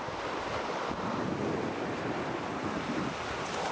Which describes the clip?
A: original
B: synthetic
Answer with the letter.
A